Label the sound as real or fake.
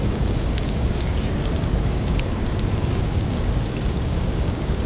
fake